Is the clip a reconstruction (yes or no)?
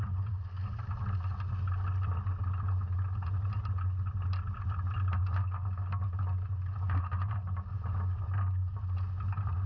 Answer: no